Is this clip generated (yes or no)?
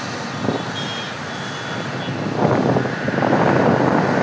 no